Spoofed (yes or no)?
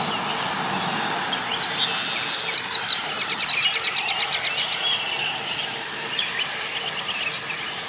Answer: no